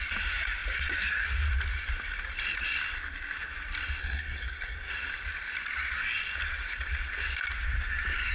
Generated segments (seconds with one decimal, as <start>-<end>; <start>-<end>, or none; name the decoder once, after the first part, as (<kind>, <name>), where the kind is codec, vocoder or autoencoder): 4.0-4.9 (codec, SNAC)